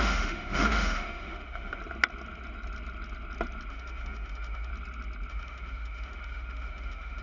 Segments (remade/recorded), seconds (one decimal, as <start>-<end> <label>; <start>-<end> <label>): 0.0-1.8 remade; 1.8-3.7 recorded; 3.7-4.7 remade; 4.7-5.3 recorded; 5.3-7.2 remade

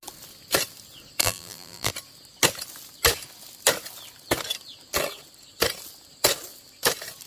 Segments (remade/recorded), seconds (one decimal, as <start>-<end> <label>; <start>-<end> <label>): 0.0-1.2 recorded; 1.2-1.9 remade; 1.9-7.3 recorded

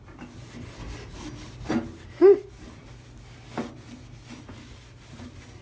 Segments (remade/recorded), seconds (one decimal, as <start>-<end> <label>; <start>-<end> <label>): 0.0-5.6 recorded

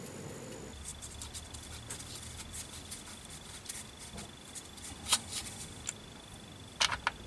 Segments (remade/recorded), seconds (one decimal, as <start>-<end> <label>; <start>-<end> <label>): 0.0-7.3 recorded

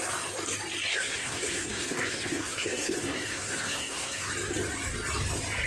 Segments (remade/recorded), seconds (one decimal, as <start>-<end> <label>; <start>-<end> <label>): 0.0-0.9 recorded; 0.9-4.3 remade; 4.3-5.7 recorded

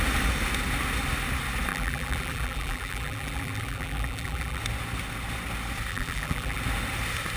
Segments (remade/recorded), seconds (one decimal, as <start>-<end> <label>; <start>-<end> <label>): 0.0-1.7 recorded; 1.7-4.6 remade; 4.6-5.9 recorded; 5.9-6.6 remade; 6.6-7.4 recorded

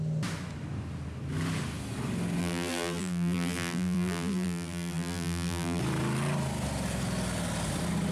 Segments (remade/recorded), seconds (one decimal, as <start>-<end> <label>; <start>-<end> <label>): 0.0-2.4 recorded; 2.4-5.8 remade; 5.8-8.1 recorded